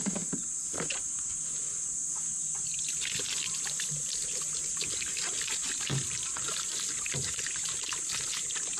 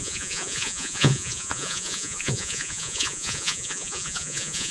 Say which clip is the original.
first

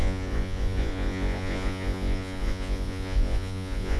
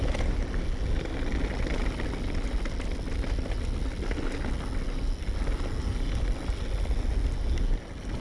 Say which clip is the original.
second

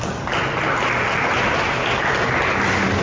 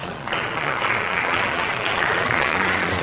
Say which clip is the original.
first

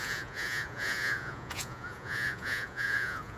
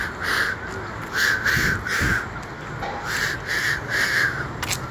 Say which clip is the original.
second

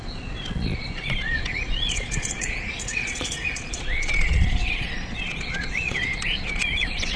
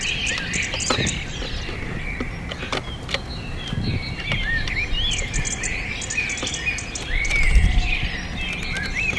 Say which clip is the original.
second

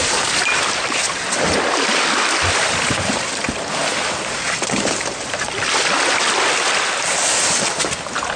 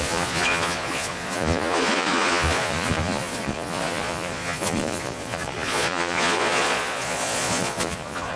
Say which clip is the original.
first